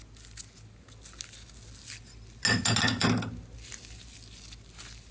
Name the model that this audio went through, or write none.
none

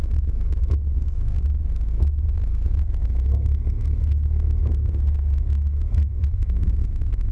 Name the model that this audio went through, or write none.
codec, SNAC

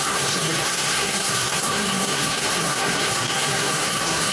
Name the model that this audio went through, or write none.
codec, SNAC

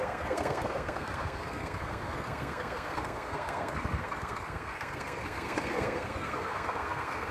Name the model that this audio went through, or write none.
codec, SNAC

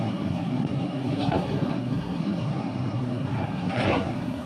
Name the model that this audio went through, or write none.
codec, SNAC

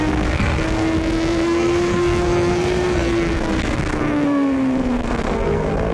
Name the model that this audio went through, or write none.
codec, SNAC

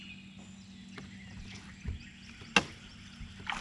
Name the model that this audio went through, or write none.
none